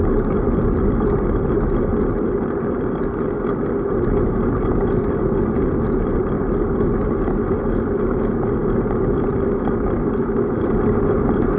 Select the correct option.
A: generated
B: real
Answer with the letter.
B